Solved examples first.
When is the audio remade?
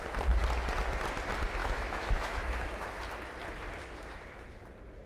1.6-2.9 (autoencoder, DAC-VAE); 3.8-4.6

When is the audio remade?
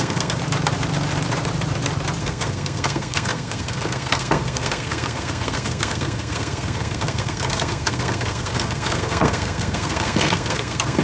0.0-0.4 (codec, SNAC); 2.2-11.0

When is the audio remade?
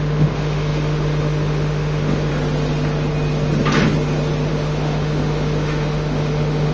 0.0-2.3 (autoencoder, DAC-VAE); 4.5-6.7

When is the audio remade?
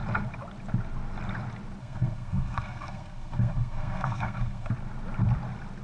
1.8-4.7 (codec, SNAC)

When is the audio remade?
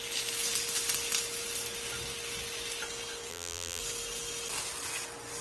3.3-3.8 (vocoder, BigVGAN v2)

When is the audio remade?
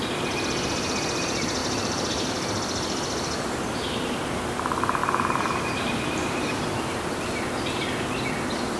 1.6-2.3 (vocoder, BigVGAN v2); 5.0-6.6